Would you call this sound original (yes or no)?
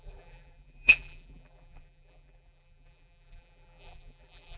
no